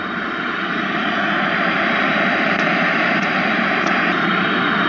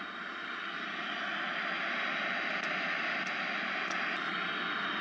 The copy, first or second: first